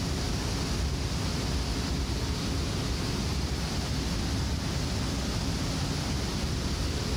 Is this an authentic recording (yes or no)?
yes